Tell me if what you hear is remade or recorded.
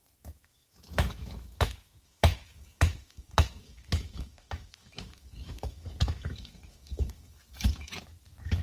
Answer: remade